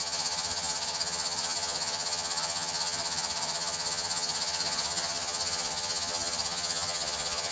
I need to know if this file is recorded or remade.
remade